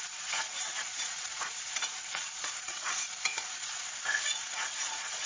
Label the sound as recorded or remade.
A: remade